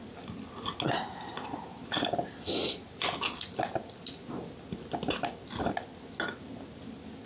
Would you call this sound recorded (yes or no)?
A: yes